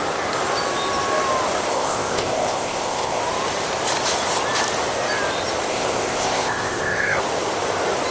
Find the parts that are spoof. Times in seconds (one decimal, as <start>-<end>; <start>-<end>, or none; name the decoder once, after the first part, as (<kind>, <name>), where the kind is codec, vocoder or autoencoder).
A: 1.7-3.2 (codec, ZipCodec); 5.7-7.2